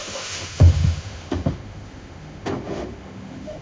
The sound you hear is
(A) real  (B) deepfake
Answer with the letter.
B